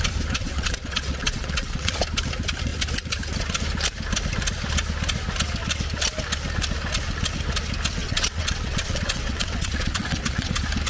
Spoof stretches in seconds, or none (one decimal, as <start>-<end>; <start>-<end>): 0.4-1.9; 8.0-10.5

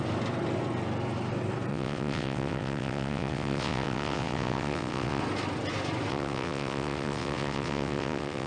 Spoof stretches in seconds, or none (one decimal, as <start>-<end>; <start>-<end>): 1.7-5.2; 6.1-8.5

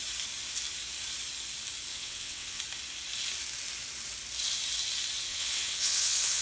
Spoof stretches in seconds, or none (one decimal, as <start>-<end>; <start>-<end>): 1.9-2.6; 5.3-6.4

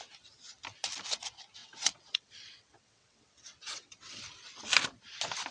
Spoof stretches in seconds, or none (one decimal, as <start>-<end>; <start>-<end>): 1.6-4.2

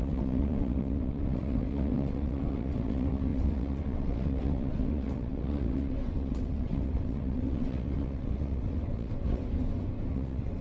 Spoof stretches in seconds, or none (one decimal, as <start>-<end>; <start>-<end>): 0.0-9.4; 10.1-10.6